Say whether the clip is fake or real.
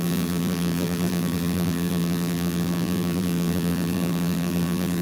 fake